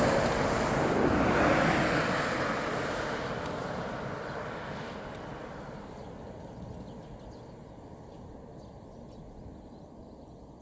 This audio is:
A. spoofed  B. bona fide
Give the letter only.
B